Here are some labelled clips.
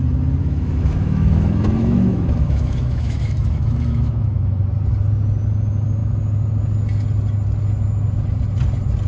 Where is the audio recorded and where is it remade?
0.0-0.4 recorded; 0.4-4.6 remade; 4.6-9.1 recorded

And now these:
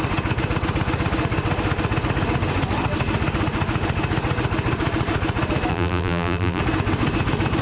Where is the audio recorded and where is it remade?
0.0-5.7 recorded; 5.7-6.6 remade; 6.6-7.6 recorded

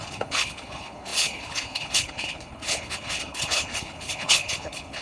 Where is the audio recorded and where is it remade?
0.0-5.0 remade

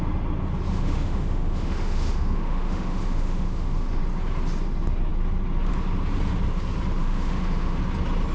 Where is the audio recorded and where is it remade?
0.0-0.7 recorded; 0.7-4.0 remade; 4.0-7.0 recorded; 7.0-7.8 remade; 7.8-8.3 recorded

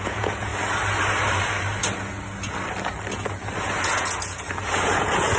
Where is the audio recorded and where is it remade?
0.0-0.5 remade; 0.5-3.6 recorded; 3.6-5.4 remade

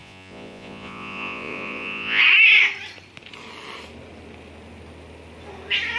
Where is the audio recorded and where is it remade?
0.0-2.2 remade; 2.2-6.0 recorded

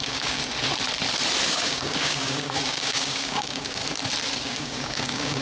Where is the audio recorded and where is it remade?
0.0-0.4 remade; 0.4-1.5 recorded; 1.5-3.8 remade; 3.8-4.4 recorded; 4.4-5.4 remade

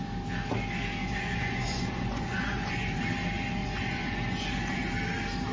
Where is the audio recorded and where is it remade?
0.0-1.0 recorded; 1.0-3.0 remade; 3.0-3.6 recorded; 3.6-4.9 remade; 4.9-5.5 recorded